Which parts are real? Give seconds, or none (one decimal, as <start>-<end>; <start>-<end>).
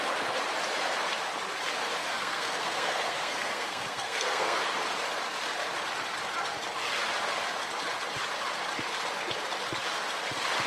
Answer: 0.0-2.0; 4.6-10.7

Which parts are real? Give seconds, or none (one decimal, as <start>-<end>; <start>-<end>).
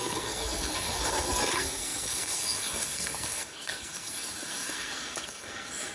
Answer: none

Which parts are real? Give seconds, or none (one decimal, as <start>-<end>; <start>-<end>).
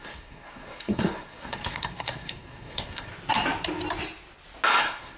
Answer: 3.1-4.8